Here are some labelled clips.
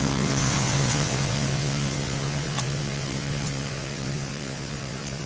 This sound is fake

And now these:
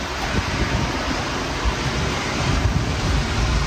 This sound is real